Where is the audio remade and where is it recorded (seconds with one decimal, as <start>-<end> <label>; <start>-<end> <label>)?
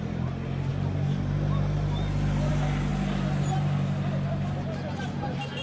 0.0-5.6 recorded